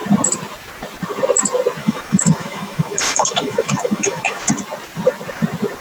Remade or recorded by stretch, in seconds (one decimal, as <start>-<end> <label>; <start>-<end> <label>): 0.0-1.8 recorded; 1.8-4.4 remade; 4.4-5.8 recorded